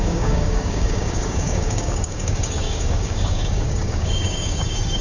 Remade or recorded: remade